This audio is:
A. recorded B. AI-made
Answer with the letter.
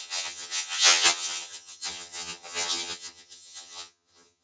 B